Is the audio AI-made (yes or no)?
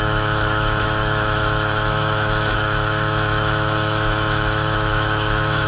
yes